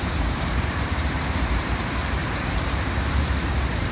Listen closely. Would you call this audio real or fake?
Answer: fake